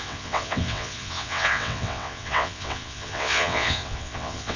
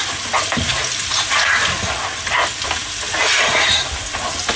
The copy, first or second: first